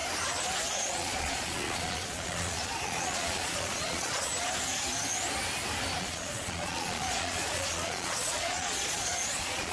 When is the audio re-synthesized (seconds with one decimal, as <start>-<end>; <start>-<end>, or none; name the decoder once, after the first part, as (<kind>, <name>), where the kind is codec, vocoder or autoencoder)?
0.7-4.3 (vocoder, Vocos); 6.0-9.7